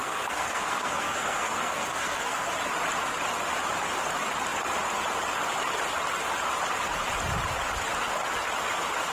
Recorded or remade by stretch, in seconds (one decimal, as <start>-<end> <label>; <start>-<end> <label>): 0.0-2.5 remade; 2.5-9.1 recorded